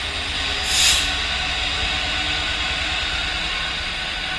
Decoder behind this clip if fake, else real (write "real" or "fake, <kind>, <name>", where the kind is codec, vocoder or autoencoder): real